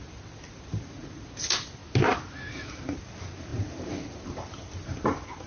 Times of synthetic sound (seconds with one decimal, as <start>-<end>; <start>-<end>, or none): 0.0-1.8; 2.5-5.5